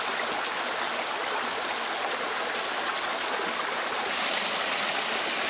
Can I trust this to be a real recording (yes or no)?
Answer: yes